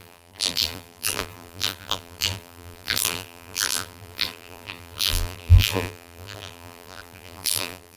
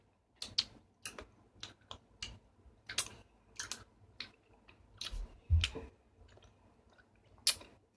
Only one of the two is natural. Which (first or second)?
second